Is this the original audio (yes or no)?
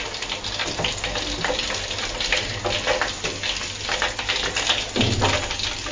yes